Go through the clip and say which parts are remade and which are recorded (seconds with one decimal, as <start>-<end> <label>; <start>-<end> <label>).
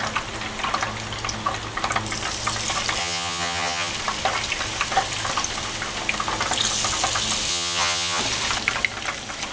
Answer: 0.0-3.0 recorded; 3.0-3.9 remade; 3.9-7.5 recorded; 7.5-8.2 remade; 8.2-9.5 recorded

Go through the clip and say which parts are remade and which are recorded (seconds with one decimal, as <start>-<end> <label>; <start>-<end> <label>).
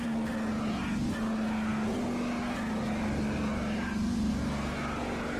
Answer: 0.0-5.4 recorded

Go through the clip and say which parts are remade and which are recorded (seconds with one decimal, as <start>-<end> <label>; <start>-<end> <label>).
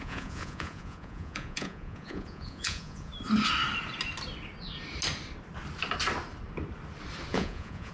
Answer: 0.0-3.1 remade; 3.1-7.3 recorded; 7.3-7.9 remade